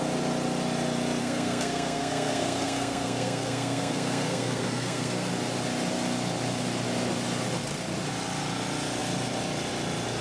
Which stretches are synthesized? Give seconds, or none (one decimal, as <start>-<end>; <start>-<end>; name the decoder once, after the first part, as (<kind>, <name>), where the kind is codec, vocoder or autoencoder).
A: 1.2-5.3 (codec, SNAC)